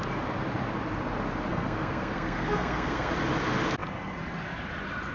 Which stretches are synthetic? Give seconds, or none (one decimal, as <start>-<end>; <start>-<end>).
1.5-3.1